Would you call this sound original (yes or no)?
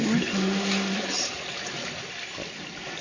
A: yes